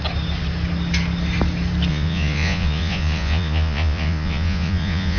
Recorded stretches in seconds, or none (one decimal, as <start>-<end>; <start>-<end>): 0.0-1.9